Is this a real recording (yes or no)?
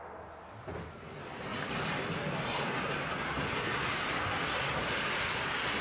yes